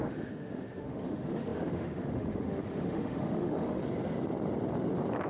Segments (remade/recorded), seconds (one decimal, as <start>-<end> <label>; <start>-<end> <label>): 0.0-3.8 remade; 3.8-5.3 recorded